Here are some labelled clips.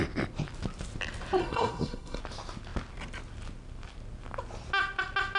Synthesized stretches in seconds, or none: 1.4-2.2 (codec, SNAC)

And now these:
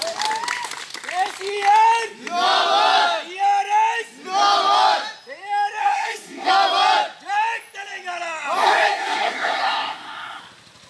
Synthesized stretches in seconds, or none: 5.8-6.5 (codec, SNAC); 8.6-10.4

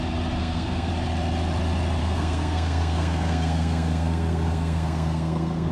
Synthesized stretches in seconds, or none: 0.4-0.9 (codec, SNAC); 2.0-5.7

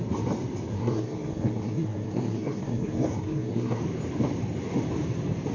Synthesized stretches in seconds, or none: 0.7-3.8 (codec, SNAC)

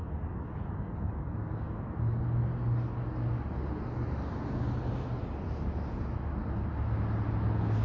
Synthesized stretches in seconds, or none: none

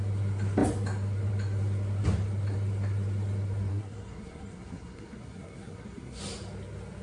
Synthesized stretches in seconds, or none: 3.7-6.2 (codec, SNAC)

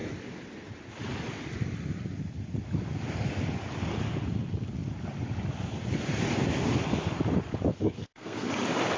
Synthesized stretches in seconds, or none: 7.7-8.5 (codec, SNAC)

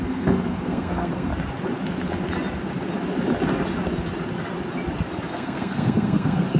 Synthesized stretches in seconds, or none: 0.0-1.3 (codec, SNAC); 5.3-6.6